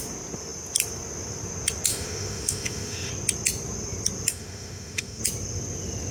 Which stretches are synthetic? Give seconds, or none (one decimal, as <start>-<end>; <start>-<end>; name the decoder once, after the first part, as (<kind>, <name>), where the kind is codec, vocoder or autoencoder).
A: 1.9-3.1 (autoencoder, DAC-VAE); 4.3-5.2